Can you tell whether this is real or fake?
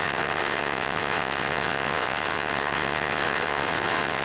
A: fake